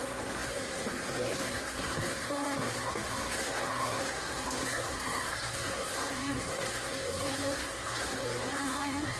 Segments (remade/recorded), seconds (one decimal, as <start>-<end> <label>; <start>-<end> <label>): 0.0-9.2 remade